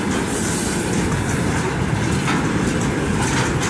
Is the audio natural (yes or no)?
yes